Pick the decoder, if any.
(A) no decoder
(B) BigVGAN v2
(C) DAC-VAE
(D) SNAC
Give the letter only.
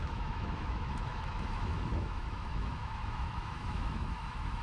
C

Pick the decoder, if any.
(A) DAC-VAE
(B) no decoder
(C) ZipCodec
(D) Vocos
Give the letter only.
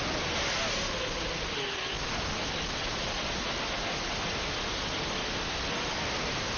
B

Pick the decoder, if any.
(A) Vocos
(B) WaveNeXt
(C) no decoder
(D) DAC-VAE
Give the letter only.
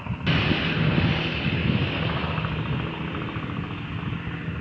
C